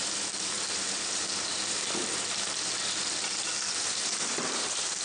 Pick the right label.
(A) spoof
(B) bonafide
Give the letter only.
A